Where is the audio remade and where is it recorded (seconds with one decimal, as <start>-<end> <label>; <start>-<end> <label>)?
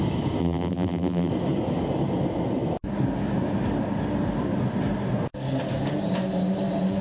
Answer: 0.0-0.4 recorded; 0.4-1.3 remade; 1.3-7.0 recorded